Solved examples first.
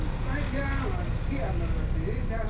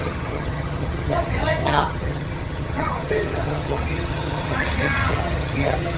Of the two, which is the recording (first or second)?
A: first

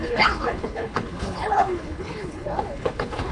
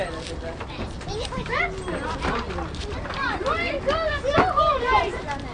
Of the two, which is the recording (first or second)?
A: second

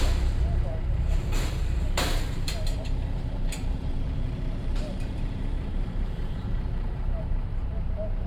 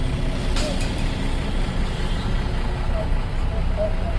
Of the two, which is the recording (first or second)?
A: second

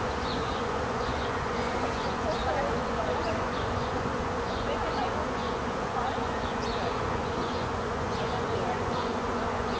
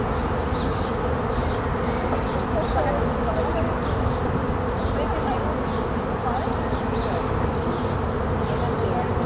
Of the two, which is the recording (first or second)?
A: second